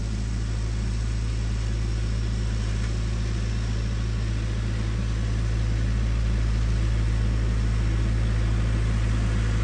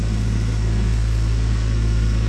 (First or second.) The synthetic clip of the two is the second